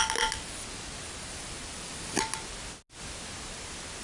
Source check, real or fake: real